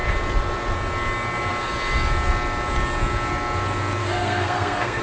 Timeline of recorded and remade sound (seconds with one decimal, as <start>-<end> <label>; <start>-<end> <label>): 0.0-4.0 recorded; 4.0-5.0 remade